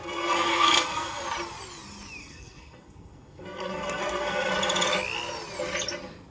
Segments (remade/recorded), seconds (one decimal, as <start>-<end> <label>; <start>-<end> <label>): 0.0-1.2 remade; 1.2-2.2 recorded; 2.2-4.5 remade; 4.5-6.3 recorded